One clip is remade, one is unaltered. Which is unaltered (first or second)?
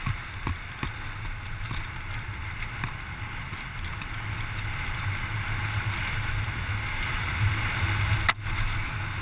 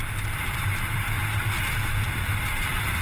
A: first